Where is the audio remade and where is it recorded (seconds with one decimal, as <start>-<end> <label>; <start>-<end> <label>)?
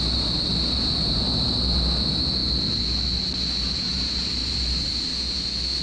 0.0-5.1 recorded; 5.1-5.8 remade